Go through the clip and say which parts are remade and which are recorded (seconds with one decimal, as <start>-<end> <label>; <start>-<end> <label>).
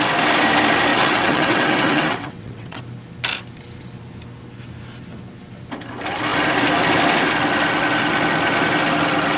0.0-0.9 recorded; 0.9-2.8 remade; 2.8-9.4 recorded